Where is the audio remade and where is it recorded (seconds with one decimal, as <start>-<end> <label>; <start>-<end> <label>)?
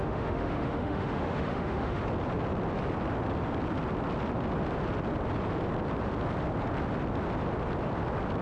0.0-2.0 remade; 2.0-8.4 recorded